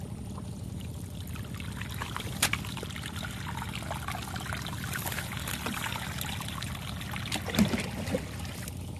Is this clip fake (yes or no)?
no